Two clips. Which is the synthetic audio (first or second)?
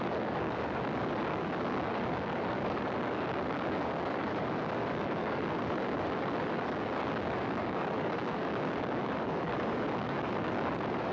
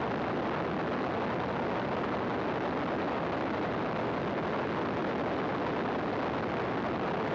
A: first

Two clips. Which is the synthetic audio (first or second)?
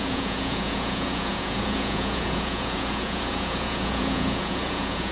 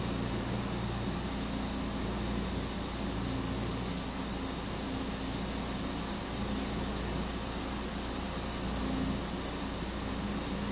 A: first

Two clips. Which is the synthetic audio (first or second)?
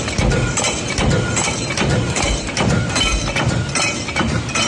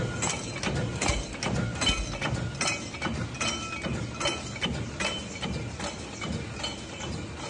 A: first